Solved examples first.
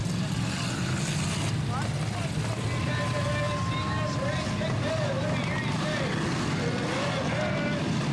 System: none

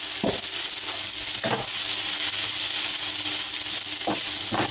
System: none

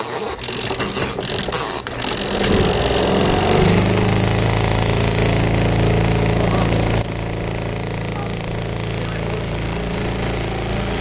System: none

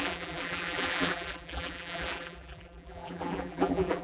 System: vocoder, BigVGAN v2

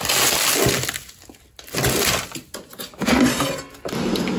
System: none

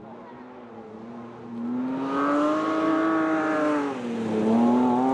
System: none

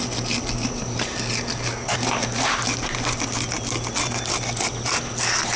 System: none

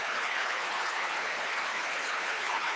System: codec, HILCodec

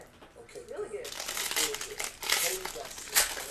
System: none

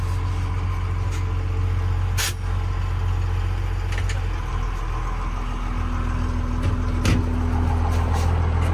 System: none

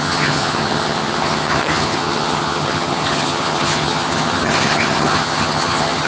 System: vocoder, HiFi-GAN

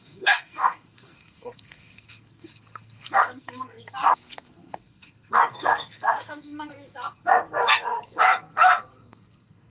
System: codec, SNAC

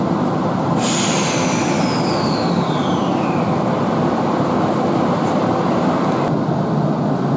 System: none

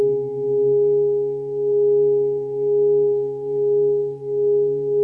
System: none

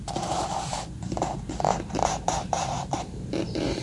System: vocoder, BigVGAN v2